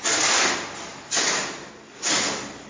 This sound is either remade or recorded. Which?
recorded